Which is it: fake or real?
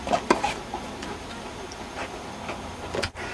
real